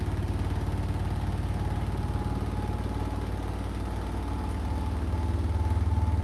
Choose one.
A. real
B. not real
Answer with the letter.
A